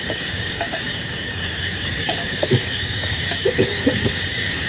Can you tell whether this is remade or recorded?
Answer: remade